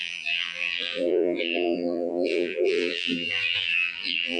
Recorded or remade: remade